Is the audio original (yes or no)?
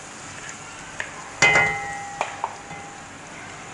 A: yes